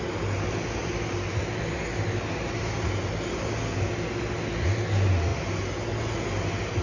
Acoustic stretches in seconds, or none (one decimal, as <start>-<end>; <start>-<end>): 0.0-6.8

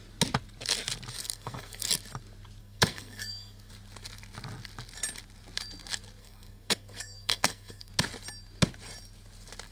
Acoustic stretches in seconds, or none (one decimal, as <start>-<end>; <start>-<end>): 0.0-1.2; 1.9-2.6; 3.7-6.2; 7.9-9.7

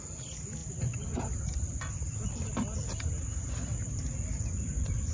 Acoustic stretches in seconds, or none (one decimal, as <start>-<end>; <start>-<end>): 0.0-0.6; 1.9-5.1